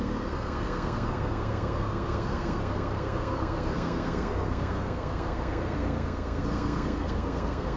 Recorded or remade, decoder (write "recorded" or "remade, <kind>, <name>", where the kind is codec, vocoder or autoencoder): remade, codec, SNAC